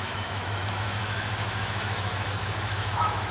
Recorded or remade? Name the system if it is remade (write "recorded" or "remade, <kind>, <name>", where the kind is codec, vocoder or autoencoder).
remade, autoencoder, DAC-VAE